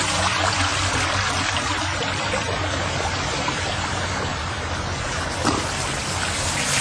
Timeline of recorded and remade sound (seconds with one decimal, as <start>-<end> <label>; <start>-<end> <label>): 0.0-0.7 remade; 0.7-4.8 recorded; 4.8-5.4 remade; 5.4-6.8 recorded